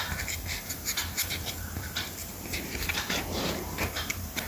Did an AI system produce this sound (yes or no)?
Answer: yes